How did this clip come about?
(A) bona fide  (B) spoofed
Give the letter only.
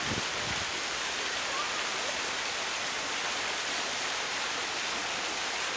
A